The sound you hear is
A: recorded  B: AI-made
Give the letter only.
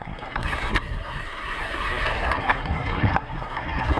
B